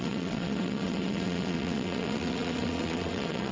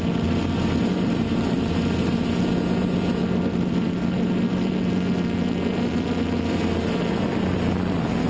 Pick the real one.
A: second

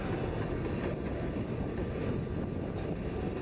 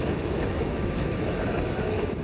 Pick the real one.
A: first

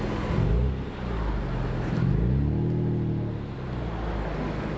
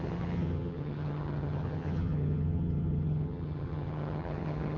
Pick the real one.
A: first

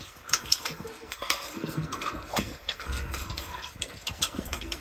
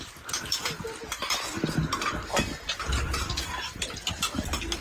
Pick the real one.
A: second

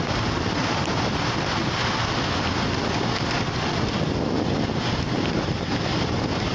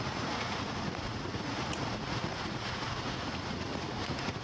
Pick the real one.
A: first